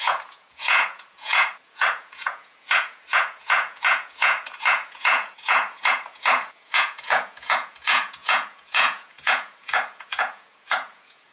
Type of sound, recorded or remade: remade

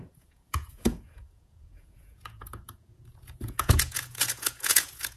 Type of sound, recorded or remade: remade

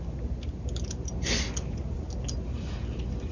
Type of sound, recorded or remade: recorded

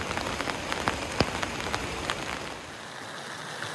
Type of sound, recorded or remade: recorded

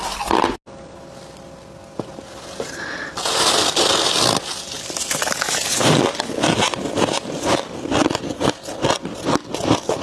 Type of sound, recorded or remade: recorded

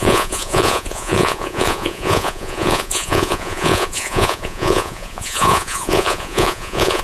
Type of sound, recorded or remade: remade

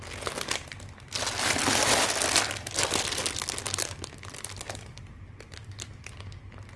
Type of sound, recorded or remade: recorded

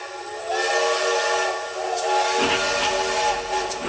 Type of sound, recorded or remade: recorded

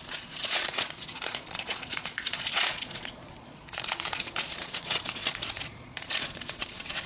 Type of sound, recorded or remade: remade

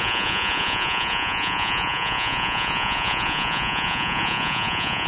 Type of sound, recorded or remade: remade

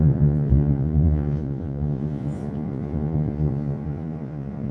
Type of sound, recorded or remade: remade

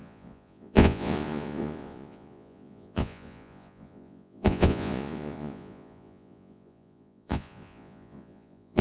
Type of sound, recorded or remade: remade